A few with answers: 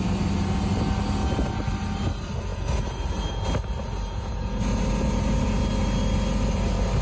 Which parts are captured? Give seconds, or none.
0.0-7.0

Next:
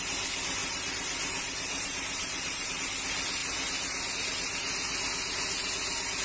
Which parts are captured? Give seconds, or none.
0.0-0.6; 2.8-6.2